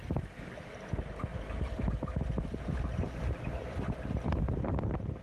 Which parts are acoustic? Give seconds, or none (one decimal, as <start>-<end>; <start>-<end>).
0.0-5.2